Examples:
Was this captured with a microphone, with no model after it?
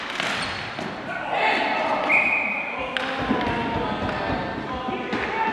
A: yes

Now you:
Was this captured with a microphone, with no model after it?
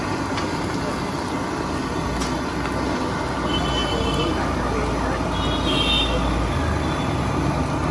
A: yes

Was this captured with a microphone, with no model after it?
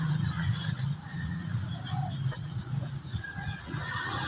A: no